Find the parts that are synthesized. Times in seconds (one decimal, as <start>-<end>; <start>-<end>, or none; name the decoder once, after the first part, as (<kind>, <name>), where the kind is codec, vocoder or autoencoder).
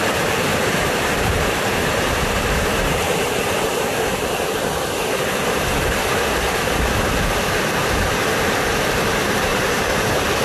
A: 0.5-2.1 (vocoder, BigVGAN v2); 9.5-10.4